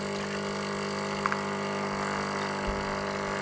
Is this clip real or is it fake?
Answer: real